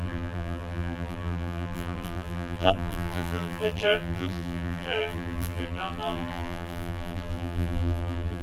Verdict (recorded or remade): remade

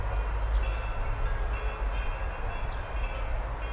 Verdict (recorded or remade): recorded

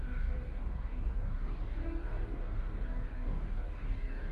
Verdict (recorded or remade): remade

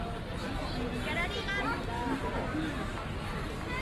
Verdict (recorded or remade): recorded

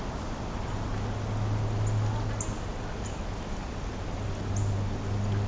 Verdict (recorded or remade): recorded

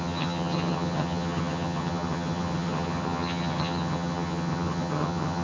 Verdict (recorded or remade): remade